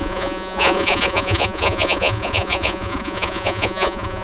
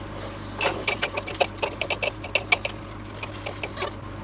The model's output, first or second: first